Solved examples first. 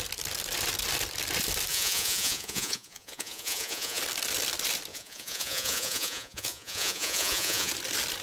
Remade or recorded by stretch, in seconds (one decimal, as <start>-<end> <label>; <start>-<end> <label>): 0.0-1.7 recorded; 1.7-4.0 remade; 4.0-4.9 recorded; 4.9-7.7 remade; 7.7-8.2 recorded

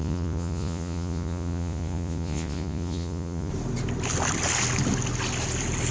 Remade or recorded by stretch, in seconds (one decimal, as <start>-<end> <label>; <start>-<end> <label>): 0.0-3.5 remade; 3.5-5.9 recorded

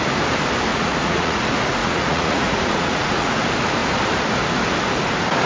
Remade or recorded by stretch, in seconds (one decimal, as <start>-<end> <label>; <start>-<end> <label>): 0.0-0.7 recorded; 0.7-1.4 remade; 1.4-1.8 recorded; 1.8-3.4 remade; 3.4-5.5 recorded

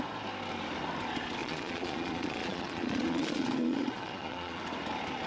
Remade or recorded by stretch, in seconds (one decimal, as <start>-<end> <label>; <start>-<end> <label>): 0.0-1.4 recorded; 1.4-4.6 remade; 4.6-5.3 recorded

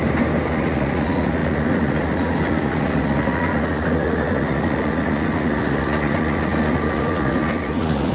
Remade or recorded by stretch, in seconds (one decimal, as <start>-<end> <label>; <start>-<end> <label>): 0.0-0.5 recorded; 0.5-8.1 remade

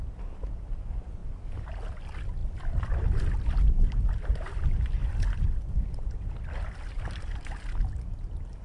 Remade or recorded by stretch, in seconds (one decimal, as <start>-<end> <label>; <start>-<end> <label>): 0.0-8.6 recorded